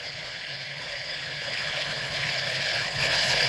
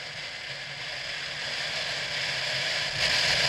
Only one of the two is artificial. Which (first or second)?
first